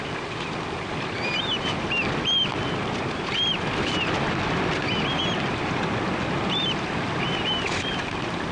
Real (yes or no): yes